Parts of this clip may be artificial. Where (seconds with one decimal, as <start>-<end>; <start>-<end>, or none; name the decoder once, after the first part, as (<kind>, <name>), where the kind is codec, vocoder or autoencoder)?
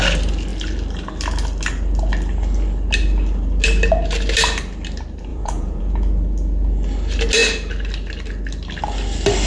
5.3-5.8 (vocoder, Vocos)